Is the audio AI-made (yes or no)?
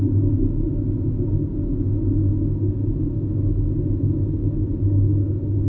no